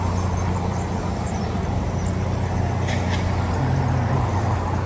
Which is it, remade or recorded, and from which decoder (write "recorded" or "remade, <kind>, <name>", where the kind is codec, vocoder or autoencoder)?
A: recorded